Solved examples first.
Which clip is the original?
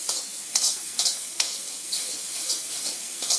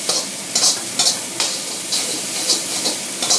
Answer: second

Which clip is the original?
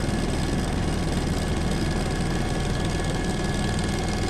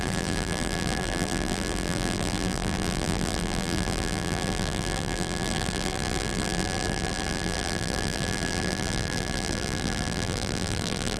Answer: first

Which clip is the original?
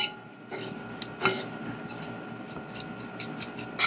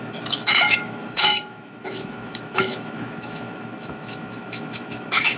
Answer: first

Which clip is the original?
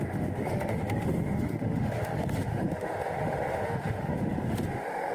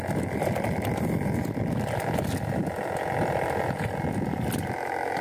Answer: second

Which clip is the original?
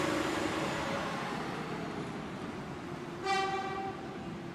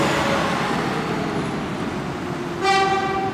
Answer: second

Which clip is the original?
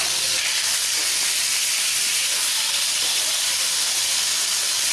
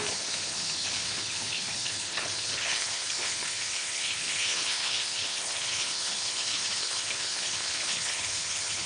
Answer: first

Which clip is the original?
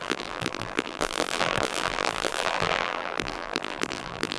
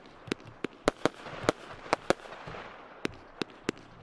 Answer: second